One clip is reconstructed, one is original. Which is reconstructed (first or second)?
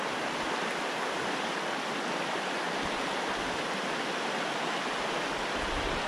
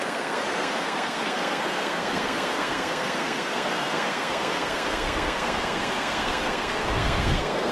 second